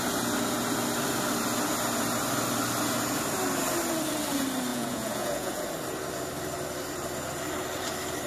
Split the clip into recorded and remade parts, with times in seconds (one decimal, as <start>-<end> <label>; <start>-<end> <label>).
0.0-4.7 recorded; 4.7-5.6 remade; 5.6-8.3 recorded